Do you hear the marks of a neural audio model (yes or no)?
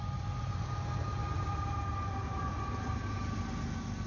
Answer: no